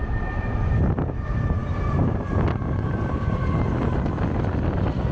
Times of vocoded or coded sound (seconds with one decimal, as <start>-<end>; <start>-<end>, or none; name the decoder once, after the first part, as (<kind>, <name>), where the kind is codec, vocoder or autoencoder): none